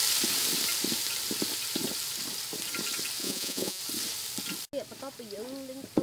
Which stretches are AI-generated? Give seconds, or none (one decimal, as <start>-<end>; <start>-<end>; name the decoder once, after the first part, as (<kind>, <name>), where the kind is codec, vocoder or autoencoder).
3.2-3.8 (vocoder, Vocos)